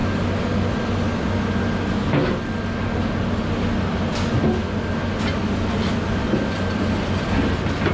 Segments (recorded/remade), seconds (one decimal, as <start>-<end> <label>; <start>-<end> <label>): 0.0-6.2 recorded; 6.2-7.9 remade